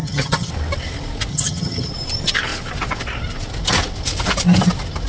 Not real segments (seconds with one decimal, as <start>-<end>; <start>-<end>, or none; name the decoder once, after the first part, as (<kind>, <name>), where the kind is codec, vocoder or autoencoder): 0.0-0.5 (vocoder, HiFi-GAN); 1.3-1.9